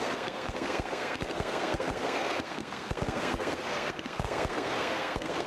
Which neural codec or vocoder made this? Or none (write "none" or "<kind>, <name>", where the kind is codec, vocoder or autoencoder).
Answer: codec, SNAC